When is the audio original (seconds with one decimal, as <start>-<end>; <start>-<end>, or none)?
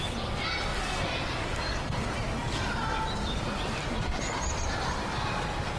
0.0-5.8